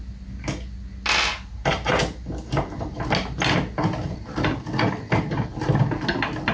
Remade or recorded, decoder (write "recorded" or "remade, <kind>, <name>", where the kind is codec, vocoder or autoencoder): recorded